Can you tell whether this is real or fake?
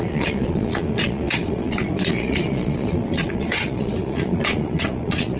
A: fake